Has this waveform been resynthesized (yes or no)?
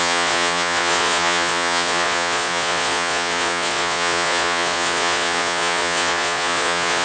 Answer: yes